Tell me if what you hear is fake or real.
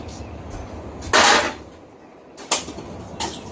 real